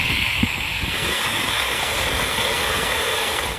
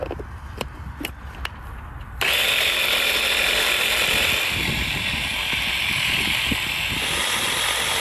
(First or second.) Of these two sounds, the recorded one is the second